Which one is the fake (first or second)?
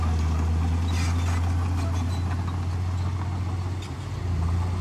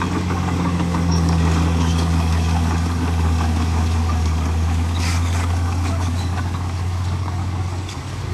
second